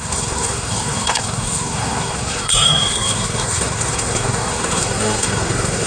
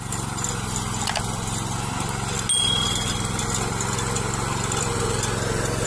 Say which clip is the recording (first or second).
second